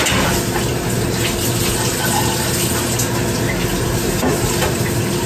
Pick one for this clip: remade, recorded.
recorded